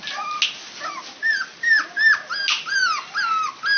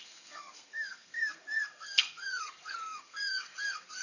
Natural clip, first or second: first